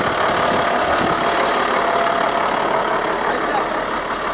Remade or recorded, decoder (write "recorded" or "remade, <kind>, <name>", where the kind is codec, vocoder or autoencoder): recorded